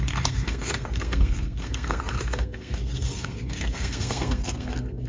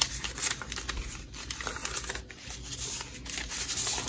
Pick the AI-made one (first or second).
first